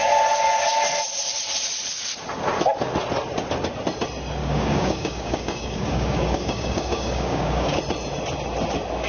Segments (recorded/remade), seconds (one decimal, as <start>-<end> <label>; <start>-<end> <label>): 0.0-4.4 recorded; 4.4-7.8 remade; 7.8-9.1 recorded